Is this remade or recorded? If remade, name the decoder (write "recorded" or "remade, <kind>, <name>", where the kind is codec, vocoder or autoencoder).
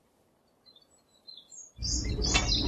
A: recorded